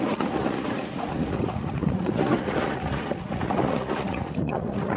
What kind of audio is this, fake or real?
fake